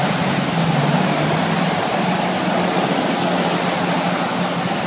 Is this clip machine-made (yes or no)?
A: no